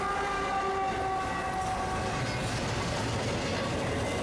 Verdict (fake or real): real